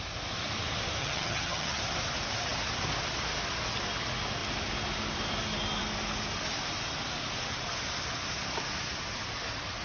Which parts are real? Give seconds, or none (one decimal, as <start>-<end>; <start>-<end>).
0.0-1.0; 1.8-9.8